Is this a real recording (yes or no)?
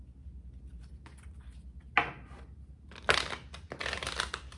yes